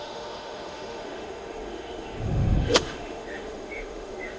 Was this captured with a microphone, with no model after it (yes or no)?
no